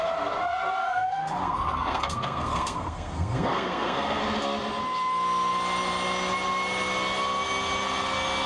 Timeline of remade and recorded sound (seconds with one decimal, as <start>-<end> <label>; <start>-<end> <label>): 0.0-0.8 recorded; 0.8-4.2 remade; 4.2-8.5 recorded